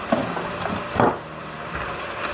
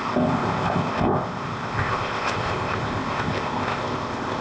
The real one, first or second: first